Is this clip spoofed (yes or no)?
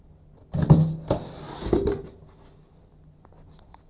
no